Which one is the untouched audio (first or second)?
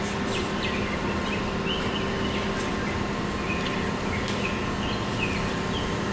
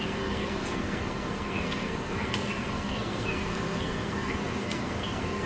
first